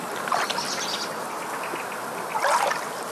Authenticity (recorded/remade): recorded